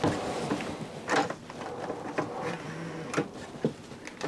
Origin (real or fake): real